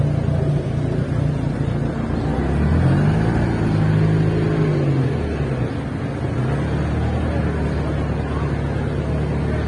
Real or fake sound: real